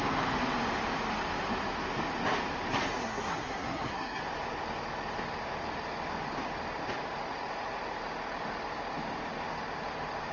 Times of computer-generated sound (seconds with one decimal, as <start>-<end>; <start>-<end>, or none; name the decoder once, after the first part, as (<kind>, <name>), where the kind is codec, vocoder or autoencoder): 3.0-4.2 (codec, SNAC)